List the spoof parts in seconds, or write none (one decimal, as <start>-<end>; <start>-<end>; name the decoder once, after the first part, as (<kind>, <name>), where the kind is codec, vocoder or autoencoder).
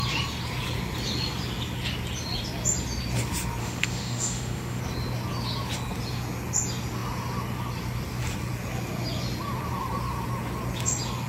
3.6-4.8 (autoencoder, DAC-VAE)